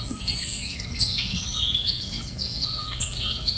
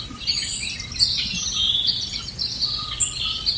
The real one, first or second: second